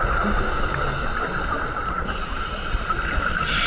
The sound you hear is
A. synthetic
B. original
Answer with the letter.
B